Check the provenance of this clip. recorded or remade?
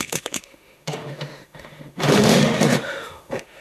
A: remade